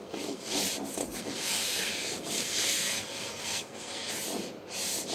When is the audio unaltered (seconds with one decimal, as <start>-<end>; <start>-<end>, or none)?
0.6-1.0; 4.1-5.1

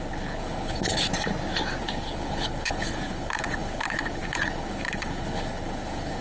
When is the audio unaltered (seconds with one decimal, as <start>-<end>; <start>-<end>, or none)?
1.1-1.8

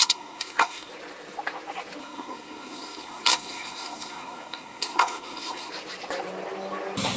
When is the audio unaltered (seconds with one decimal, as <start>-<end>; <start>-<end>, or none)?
0.9-2.0; 5.7-7.2

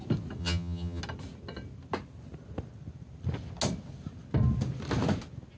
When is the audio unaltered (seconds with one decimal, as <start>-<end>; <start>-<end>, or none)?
0.0-0.4; 1.0-5.6

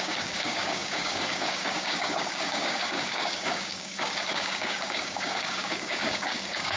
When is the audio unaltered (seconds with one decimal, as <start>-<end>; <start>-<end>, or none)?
none

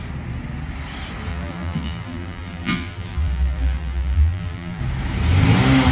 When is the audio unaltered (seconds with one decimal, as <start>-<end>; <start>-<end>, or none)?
0.0-1.3; 4.8-5.9

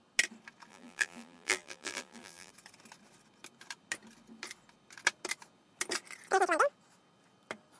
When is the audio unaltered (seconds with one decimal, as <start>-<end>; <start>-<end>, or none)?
0.0-0.7; 2.5-7.8